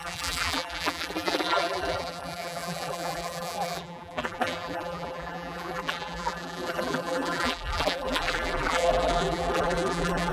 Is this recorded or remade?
remade